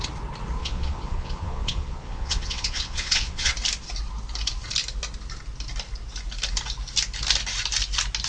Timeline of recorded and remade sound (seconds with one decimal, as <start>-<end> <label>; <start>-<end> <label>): 0.0-0.6 recorded; 0.6-3.5 remade; 3.5-8.3 recorded